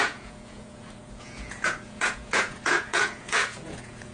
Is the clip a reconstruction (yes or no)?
yes